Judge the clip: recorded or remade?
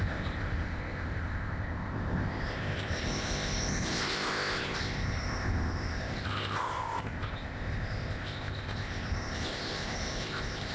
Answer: remade